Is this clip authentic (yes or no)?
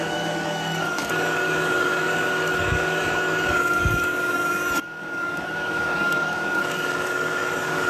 no